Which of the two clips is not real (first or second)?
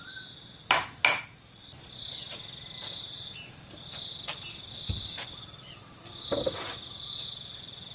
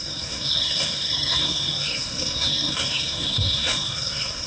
second